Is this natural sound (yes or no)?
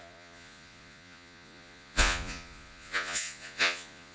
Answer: no